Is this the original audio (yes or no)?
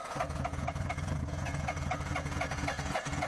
no